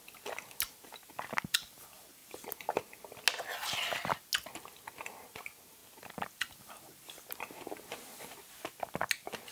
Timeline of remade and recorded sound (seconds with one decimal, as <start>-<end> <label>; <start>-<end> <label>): 0.0-9.5 recorded

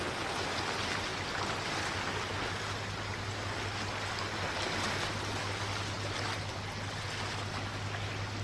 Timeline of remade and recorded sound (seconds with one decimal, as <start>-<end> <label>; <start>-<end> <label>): 0.0-8.4 recorded

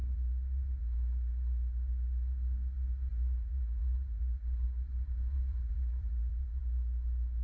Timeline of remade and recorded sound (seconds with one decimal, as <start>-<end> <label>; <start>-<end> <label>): 0.0-0.8 remade; 0.8-3.1 recorded; 3.1-6.6 remade; 6.6-7.4 recorded

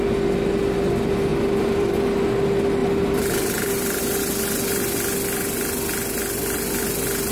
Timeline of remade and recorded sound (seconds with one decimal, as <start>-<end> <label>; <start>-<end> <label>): 0.0-1.3 recorded; 1.3-2.0 remade; 2.0-2.8 recorded; 2.8-4.0 remade; 4.0-7.3 recorded

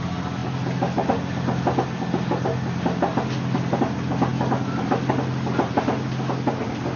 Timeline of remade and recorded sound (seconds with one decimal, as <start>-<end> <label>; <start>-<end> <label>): 0.0-7.0 recorded